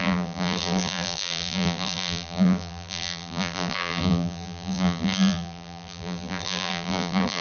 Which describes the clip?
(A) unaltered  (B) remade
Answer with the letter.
B